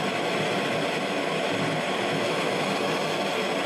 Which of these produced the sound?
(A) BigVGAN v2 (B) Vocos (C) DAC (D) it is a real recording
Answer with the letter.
D